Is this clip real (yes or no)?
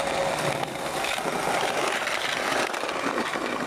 yes